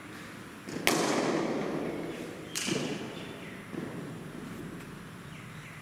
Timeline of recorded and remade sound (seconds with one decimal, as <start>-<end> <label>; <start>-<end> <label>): 0.0-5.8 recorded